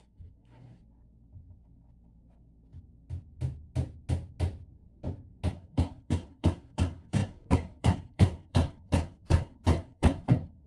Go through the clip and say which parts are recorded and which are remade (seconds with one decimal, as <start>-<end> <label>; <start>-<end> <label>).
0.0-0.8 remade; 0.8-5.5 recorded; 5.5-10.7 remade